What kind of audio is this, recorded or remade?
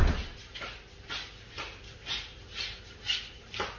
recorded